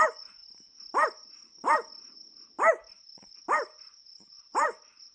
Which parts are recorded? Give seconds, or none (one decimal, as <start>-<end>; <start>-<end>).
0.4-2.9